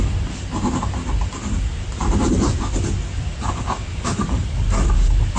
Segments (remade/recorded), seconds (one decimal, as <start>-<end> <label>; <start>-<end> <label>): 0.0-5.4 recorded